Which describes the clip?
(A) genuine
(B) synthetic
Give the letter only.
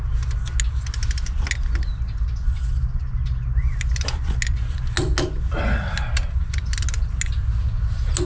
A